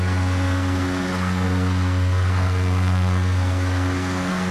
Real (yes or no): no